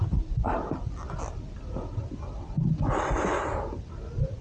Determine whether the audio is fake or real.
real